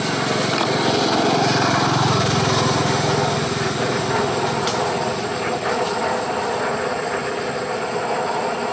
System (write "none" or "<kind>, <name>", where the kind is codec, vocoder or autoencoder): none